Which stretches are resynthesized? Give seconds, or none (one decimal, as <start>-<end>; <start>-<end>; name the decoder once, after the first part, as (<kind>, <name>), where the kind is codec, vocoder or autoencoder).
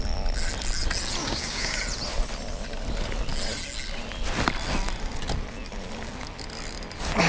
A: 1.2-1.8 (codec, DAC)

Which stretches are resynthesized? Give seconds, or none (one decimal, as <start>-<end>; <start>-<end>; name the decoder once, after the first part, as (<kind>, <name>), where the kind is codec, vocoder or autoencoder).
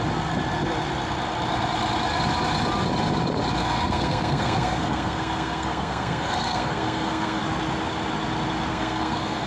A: 3.6-7.4 (codec, SNAC); 8.7-9.5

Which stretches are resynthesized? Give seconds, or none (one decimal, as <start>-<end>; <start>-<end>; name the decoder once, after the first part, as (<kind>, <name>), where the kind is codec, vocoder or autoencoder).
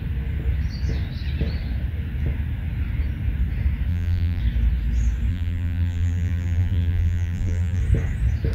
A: 3.9-4.4 (vocoder, BigVGAN v2); 5.3-7.8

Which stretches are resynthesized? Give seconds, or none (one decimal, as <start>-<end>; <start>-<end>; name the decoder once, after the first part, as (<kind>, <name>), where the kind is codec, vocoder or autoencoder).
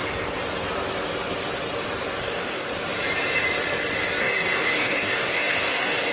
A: 2.2-2.7 (codec, DAC); 4.2-6.1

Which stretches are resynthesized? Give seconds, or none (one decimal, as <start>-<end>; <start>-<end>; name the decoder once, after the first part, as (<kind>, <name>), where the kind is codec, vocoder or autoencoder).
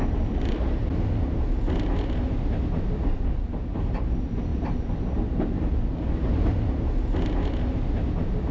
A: none